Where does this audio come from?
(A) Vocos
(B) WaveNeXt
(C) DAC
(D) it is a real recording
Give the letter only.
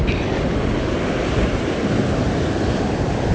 D